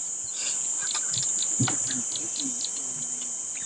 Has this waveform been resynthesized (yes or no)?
no